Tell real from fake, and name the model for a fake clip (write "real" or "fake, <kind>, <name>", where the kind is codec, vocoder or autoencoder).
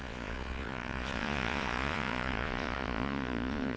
fake, vocoder, Vocos